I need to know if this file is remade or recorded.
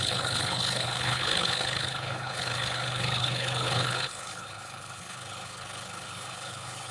remade